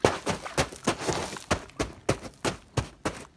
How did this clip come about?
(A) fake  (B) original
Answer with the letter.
B